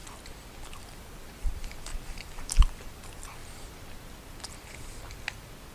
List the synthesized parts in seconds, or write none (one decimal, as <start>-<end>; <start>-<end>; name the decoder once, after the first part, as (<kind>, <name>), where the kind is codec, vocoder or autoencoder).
0.8-1.9 (vocoder, BigVGAN v2); 3.0-3.4